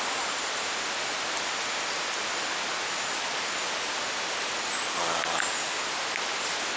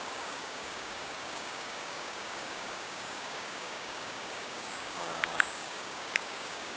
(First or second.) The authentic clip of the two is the first